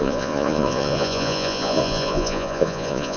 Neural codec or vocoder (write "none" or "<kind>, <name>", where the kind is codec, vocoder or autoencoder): vocoder, Vocos